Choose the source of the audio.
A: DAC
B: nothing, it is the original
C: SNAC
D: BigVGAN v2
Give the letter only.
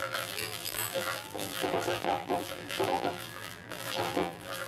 D